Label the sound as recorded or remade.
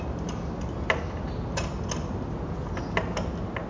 recorded